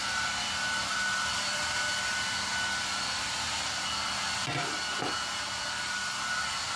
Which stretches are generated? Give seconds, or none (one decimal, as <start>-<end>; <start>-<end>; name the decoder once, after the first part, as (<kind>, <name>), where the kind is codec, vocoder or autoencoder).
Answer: none